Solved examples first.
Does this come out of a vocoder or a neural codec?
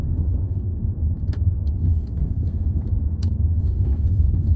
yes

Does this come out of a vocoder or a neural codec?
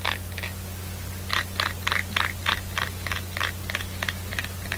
no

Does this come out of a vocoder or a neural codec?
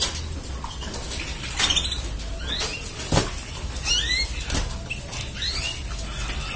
no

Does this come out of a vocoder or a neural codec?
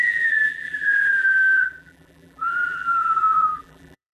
yes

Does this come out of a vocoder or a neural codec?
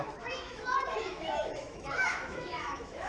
yes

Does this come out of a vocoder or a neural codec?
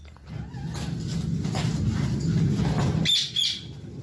no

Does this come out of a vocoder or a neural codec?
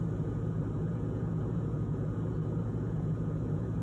yes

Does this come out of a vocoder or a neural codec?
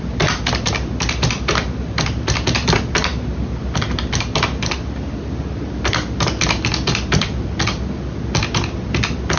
no